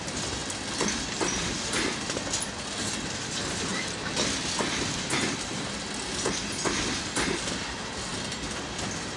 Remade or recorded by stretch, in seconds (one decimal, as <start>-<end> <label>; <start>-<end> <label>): 0.0-9.2 recorded